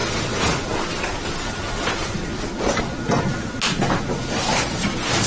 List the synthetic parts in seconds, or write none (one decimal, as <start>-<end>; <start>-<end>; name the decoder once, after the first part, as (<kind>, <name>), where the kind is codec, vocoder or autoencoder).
none